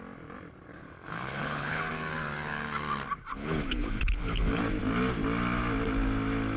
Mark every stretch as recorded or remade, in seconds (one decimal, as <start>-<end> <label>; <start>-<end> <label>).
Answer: 0.0-0.7 recorded; 0.7-1.8 remade; 1.8-3.3 recorded; 3.3-4.6 remade; 4.6-6.6 recorded